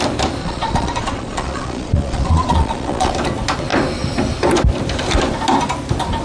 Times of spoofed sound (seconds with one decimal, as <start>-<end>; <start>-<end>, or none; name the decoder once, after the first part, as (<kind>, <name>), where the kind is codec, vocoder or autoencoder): 0.4-3.1 (vocoder, Vocos)